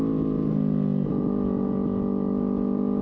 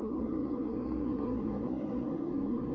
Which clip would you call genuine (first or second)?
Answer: first